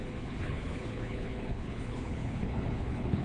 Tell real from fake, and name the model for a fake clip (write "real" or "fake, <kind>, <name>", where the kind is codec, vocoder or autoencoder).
fake, codec, HILCodec